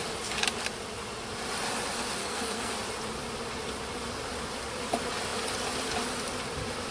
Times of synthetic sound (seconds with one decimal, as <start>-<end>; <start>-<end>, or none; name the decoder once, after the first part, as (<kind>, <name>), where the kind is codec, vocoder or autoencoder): 2.2-2.7 (codec, SNAC)